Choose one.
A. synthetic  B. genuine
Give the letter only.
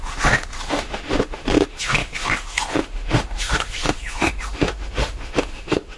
A